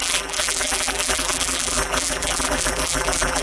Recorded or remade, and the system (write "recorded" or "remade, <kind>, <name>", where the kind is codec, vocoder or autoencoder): remade, vocoder, BigVGAN v2